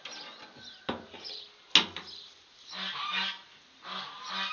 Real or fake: real